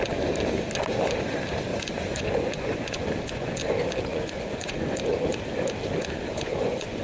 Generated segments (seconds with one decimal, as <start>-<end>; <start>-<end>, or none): 1.7-3.6; 4.1-5.0; 6.3-7.0